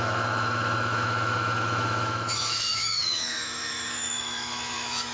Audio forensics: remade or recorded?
remade